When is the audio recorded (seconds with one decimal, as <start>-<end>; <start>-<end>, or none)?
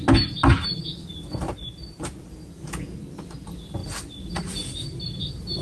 0.0-5.6